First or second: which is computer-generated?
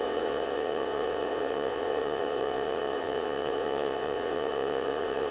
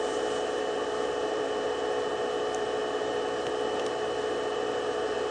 first